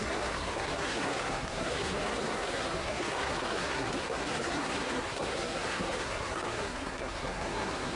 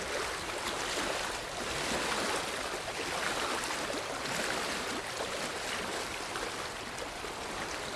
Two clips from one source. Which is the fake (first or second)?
first